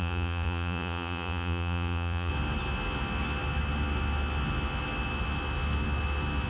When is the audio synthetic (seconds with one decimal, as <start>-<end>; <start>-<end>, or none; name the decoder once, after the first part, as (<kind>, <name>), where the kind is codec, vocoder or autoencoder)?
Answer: 0.0-2.3 (vocoder, Vocos)